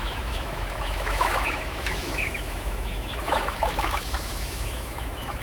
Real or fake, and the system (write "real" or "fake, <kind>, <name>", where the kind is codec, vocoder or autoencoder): fake, autoencoder, DAC-VAE